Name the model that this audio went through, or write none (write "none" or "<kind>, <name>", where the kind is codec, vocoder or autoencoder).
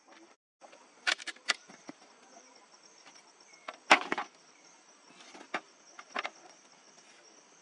none